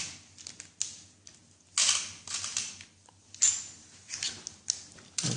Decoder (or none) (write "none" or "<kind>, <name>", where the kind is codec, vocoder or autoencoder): none